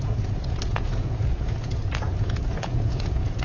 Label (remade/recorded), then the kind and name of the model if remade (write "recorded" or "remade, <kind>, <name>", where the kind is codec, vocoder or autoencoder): remade, vocoder, Vocos